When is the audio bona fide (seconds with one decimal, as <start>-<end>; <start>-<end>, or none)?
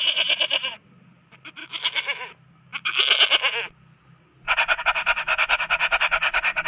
0.0-1.6; 2.3-6.7